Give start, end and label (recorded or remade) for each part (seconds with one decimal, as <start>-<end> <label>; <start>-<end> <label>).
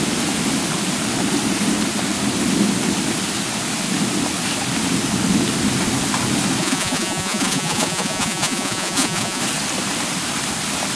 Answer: 0.0-6.6 recorded; 6.6-9.4 remade; 9.4-11.0 recorded